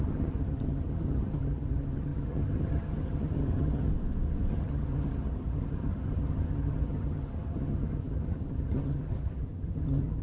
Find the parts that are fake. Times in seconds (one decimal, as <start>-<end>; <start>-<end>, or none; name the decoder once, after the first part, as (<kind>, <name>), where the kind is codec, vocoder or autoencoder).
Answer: 0.0-3.9 (vocoder, HiFi-GAN); 4.5-10.2